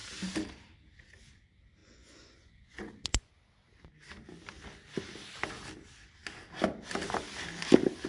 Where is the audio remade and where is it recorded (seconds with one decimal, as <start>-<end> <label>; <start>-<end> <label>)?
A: 0.0-1.8 recorded; 1.8-3.3 remade; 3.3-8.1 recorded